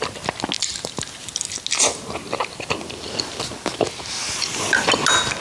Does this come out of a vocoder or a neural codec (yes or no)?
no